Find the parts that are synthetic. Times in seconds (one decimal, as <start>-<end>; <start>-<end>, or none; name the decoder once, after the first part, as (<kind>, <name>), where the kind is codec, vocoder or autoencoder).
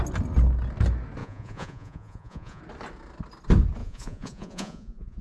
1.2-2.6 (vocoder, Vocos); 3.8-5.2